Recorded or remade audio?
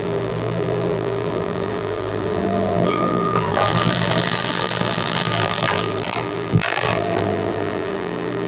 remade